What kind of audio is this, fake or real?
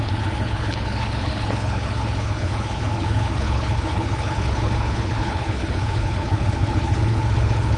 fake